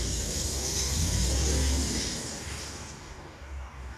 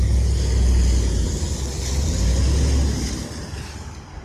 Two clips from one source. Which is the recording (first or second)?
second